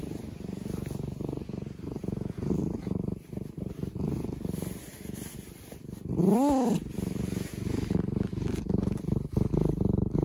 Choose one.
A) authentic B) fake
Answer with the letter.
A